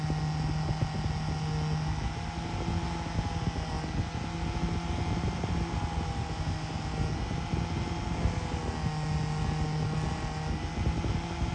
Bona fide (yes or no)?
yes